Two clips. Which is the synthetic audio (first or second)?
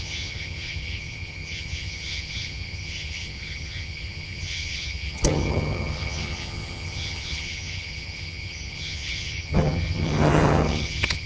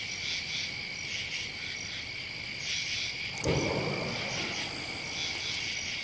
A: first